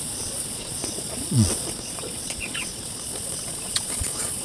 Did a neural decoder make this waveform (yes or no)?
yes